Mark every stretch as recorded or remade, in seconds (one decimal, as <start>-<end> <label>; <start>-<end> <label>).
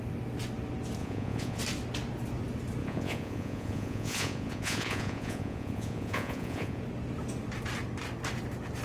0.0-1.0 recorded; 1.0-1.6 remade; 1.6-2.8 recorded; 2.8-6.8 remade; 6.8-8.8 recorded